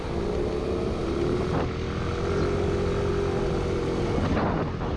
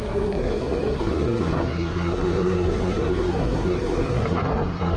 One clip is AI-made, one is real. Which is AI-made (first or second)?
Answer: second